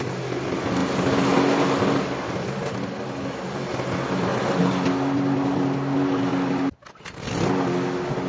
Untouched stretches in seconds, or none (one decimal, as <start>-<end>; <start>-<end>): 0.0-8.3